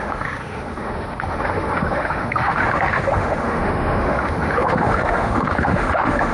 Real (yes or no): no